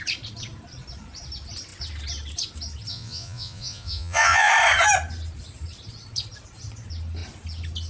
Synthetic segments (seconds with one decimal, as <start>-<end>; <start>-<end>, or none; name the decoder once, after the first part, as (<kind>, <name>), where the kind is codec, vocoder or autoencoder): 2.9-4.5 (vocoder, Vocos)